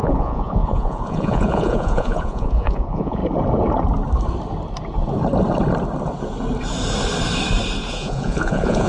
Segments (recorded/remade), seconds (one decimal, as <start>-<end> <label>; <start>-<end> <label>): 0.0-3.2 remade; 3.2-7.9 recorded; 7.9-8.9 remade